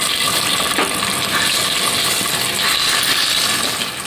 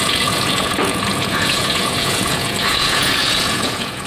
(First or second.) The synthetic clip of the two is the second